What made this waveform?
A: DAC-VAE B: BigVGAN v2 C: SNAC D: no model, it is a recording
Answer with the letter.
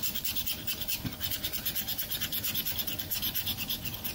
B